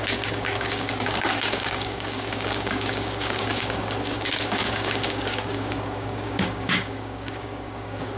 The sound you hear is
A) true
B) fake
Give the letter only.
B